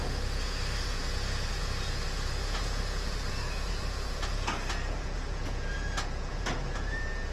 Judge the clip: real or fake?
fake